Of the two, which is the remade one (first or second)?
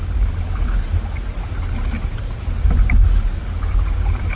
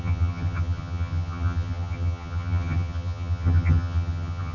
second